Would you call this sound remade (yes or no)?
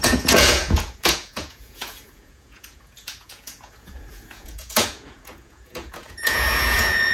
yes